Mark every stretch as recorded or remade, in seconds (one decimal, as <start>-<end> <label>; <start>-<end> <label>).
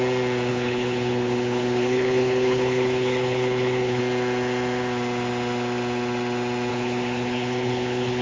0.0-0.5 recorded; 0.5-4.0 remade; 4.0-6.7 recorded; 6.7-8.2 remade